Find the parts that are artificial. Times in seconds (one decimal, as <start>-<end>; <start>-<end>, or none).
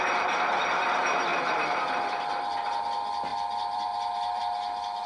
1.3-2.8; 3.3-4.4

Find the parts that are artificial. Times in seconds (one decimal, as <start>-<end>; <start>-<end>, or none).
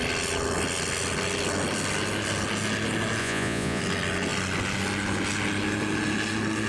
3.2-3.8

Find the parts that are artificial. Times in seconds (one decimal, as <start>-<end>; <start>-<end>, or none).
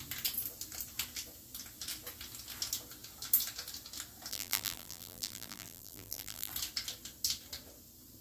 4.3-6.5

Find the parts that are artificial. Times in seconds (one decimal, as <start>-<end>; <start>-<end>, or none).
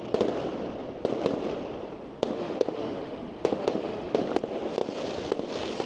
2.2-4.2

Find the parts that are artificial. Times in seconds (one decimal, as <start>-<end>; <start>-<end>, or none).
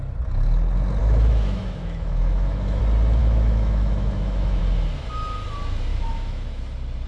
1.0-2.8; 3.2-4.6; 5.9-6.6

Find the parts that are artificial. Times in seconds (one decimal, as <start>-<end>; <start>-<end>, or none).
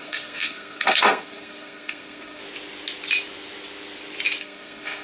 0.0-2.4; 4.4-5.0